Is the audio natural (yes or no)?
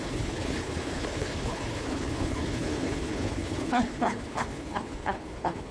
no